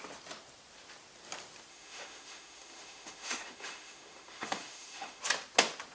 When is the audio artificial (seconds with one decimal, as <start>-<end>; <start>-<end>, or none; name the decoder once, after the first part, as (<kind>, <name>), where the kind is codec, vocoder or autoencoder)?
1.7-5.2 (autoencoder, DAC-VAE)